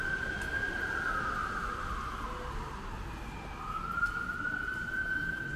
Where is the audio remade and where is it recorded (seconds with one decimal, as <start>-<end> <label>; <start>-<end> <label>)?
0.0-1.4 recorded; 1.4-2.0 remade; 2.0-5.6 recorded